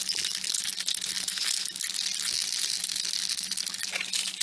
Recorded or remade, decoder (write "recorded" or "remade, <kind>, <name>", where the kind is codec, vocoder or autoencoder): recorded